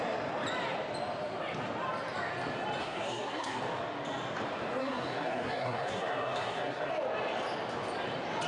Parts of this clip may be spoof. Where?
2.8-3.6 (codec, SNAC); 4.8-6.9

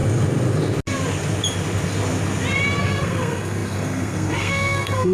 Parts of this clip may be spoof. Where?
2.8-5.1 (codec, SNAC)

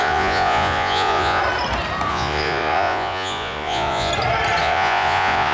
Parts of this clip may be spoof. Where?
0.0-1.4 (vocoder, Vocos); 2.1-4.1; 4.6-5.5

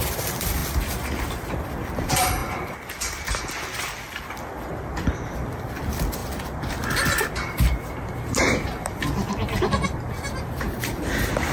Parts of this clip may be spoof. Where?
0.0-0.6 (vocoder, BigVGAN v2); 1.5-6.2; 10.6-11.5

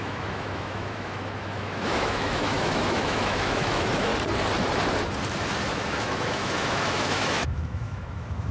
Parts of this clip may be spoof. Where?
0.0-4.1 (autoencoder, DAC-VAE); 5.7-8.5

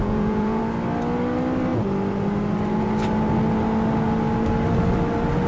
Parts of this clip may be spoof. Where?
0.0-0.6 (vocoder, Vocos)